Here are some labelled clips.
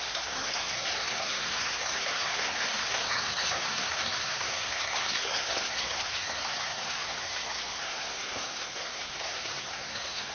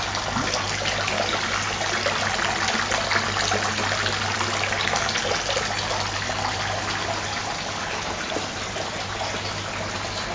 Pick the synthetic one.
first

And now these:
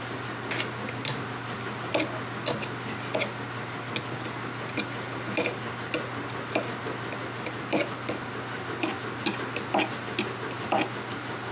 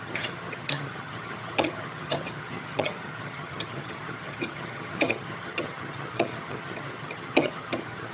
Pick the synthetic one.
second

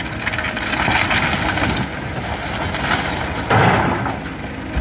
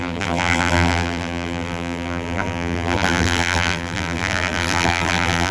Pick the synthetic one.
second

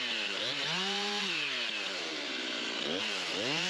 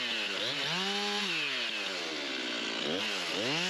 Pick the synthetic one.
first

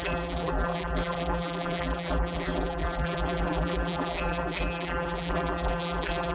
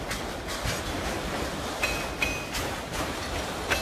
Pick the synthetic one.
first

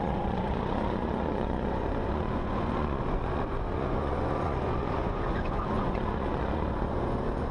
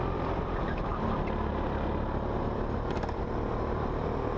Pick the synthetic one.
first